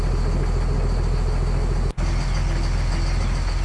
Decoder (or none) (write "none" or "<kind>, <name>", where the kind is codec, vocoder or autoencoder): none